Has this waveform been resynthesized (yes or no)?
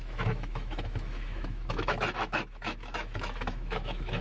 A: yes